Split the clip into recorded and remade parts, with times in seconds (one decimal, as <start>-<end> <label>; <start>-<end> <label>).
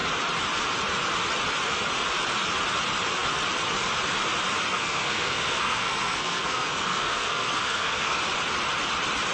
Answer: 0.0-4.7 recorded; 4.7-8.2 remade; 8.2-9.3 recorded